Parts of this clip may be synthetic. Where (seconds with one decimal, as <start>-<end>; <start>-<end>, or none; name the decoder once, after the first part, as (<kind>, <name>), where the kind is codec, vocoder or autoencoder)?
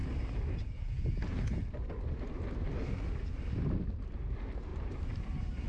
4.7-5.7 (vocoder, BigVGAN v2)